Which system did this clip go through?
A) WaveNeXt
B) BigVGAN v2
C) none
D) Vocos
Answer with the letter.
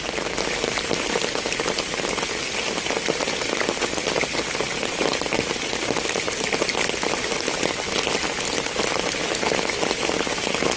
C